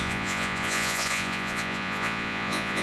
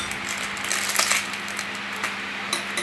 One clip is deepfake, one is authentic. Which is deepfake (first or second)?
first